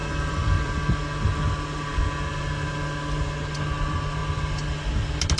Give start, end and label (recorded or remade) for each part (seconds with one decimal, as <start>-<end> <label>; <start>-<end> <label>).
0.0-0.7 remade; 0.7-5.4 recorded